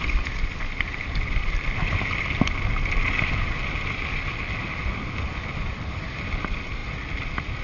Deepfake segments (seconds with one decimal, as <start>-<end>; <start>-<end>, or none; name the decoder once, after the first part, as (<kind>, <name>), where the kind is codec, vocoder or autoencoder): none